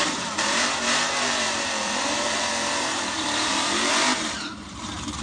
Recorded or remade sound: remade